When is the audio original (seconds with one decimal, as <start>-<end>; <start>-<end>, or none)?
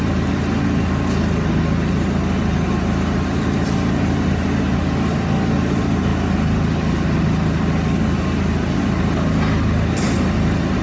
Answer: 0.0-10.8